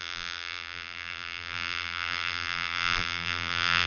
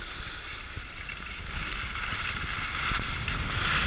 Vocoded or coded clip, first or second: first